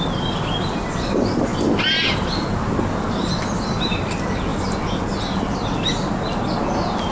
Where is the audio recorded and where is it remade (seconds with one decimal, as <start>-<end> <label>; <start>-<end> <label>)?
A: 0.0-7.1 recorded